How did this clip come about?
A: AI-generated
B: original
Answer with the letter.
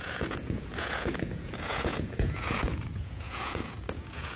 A